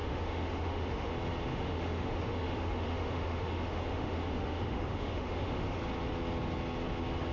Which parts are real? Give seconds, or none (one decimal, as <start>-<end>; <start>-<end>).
1.1-1.5; 5.8-7.3